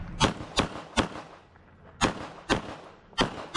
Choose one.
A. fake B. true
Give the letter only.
B